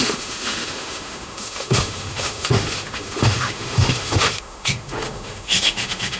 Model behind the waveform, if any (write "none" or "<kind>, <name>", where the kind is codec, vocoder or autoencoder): autoencoder, DAC-VAE